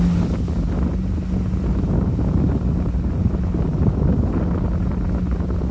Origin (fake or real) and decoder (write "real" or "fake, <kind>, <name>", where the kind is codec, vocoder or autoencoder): real